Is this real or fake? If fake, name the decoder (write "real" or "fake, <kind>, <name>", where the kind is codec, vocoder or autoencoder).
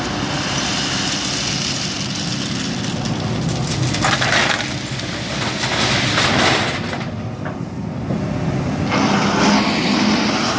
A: real